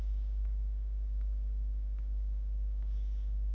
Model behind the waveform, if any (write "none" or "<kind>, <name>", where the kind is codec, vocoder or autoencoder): codec, DAC